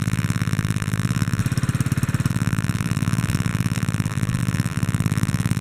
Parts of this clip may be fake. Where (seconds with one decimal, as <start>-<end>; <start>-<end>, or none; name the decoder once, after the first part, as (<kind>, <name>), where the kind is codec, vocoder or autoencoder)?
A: 0.0-1.4 (vocoder, BigVGAN v2); 2.3-5.6